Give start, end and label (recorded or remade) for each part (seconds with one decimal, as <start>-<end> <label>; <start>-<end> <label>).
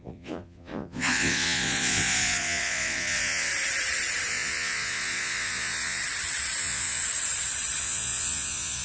0.0-3.5 remade; 3.5-4.3 recorded; 4.3-6.0 remade; 6.0-6.6 recorded; 6.6-7.0 remade; 7.0-7.8 recorded; 7.8-8.8 remade